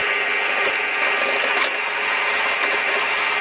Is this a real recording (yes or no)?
yes